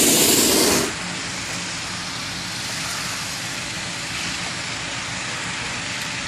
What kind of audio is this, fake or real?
real